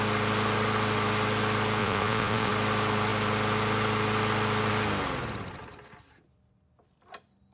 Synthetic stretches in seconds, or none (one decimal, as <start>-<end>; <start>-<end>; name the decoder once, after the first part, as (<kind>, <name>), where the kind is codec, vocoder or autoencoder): 1.8-2.5 (vocoder, Vocos)